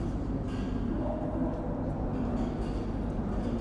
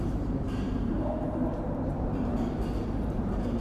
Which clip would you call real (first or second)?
first